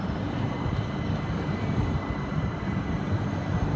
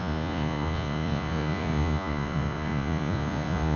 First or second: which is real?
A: first